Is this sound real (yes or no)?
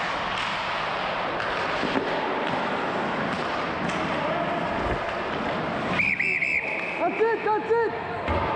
yes